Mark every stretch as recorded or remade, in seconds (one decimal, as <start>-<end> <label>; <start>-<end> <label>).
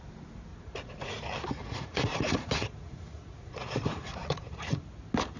0.0-0.5 recorded; 0.5-1.2 remade; 1.2-1.6 recorded; 1.6-4.8 remade; 4.8-5.4 recorded